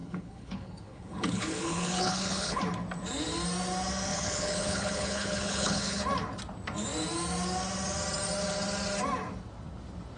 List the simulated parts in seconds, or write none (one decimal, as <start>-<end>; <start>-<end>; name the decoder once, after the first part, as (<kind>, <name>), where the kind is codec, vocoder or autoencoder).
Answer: 0.0-2.6 (codec, HILCodec); 4.1-6.0